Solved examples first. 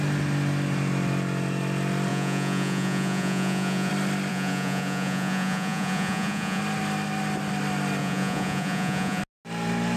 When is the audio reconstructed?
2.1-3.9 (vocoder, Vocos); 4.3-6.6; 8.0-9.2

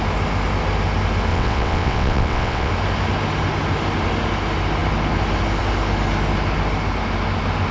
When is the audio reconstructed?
1.3-2.7 (vocoder, WaveNeXt)